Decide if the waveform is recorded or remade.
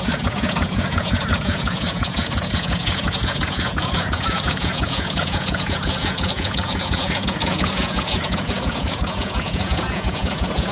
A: remade